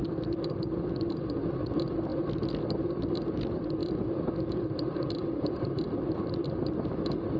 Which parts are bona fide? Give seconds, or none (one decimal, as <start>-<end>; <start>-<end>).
0.0-3.8; 6.5-7.4